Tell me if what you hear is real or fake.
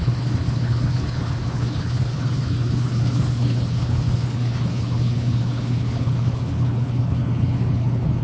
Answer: fake